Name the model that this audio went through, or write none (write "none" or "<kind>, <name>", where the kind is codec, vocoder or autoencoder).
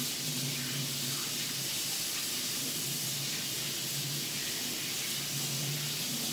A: none